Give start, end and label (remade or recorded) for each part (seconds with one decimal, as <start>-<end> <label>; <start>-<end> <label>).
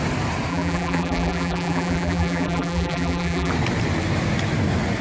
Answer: 0.0-0.5 recorded; 0.5-3.5 remade; 3.5-5.0 recorded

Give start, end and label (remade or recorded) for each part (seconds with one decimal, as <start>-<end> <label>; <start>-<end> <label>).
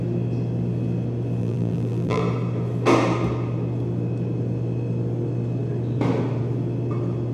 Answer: 0.0-1.4 recorded; 1.4-2.2 remade; 2.2-7.3 recorded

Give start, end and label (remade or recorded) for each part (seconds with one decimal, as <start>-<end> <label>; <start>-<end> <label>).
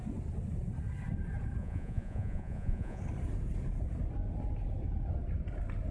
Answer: 0.0-1.6 recorded; 1.6-3.0 remade; 3.0-5.9 recorded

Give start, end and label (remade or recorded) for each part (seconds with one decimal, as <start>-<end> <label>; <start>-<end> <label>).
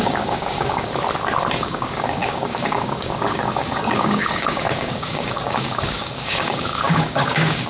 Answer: 0.0-0.9 remade; 0.9-1.6 recorded; 1.6-7.7 remade